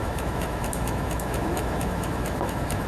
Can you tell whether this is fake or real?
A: fake